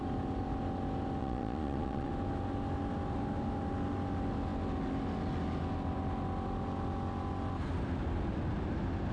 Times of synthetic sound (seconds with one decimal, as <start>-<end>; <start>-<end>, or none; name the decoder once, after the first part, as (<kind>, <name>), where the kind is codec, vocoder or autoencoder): 1.2-2.1 (vocoder, Vocos)